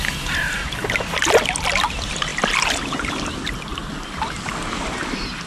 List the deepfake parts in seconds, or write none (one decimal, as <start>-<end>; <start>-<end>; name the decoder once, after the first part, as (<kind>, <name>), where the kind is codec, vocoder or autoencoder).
none